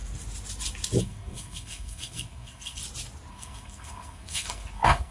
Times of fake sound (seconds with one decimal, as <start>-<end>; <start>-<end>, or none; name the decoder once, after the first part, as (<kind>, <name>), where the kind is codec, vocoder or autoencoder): 1.0-2.8 (codec, SNAC); 3.3-5.1